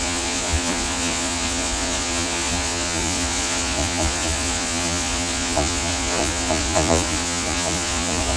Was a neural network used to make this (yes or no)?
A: yes